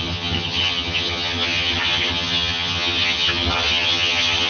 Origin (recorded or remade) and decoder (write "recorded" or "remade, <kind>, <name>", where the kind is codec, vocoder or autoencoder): remade, vocoder, HiFi-GAN